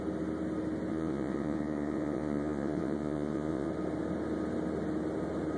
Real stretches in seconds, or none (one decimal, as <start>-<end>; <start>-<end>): 0.0-0.9; 3.7-5.6